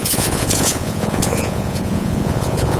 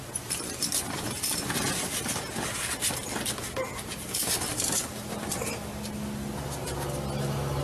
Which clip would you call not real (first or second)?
first